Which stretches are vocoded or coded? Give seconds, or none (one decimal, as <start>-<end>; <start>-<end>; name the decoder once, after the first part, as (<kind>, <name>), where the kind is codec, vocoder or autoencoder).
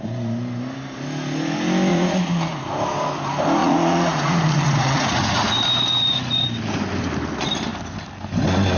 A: 1.9-2.6 (vocoder, Vocos); 3.6-5.5